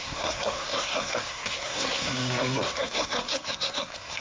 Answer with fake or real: fake